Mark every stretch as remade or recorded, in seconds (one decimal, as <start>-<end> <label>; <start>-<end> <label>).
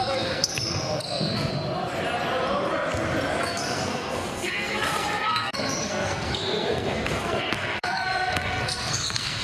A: 0.0-1.5 remade; 1.5-3.4 recorded; 3.4-9.4 remade